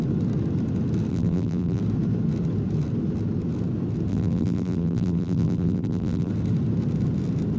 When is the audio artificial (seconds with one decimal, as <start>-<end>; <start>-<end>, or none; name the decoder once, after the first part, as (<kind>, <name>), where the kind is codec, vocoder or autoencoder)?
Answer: 1.1-1.8 (vocoder, BigVGAN v2); 4.1-6.3